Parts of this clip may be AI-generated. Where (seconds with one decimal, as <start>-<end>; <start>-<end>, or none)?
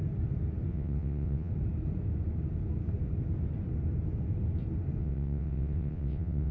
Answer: 0.7-1.5; 5.0-6.5